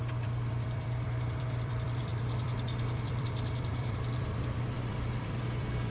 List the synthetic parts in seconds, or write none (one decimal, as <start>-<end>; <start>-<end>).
0.0-5.9